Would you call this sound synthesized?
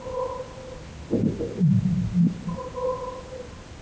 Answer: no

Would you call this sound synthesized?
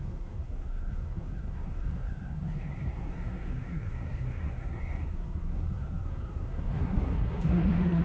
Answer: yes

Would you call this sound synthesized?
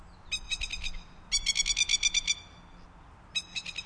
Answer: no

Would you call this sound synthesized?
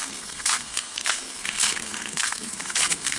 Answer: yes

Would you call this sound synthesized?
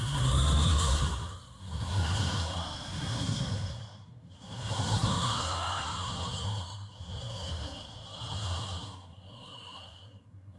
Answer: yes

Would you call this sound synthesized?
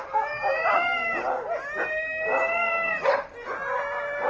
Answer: no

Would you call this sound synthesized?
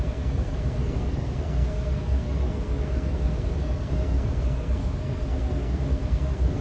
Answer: yes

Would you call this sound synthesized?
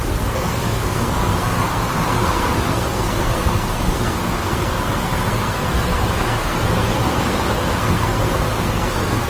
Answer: yes